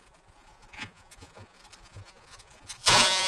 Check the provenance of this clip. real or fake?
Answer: fake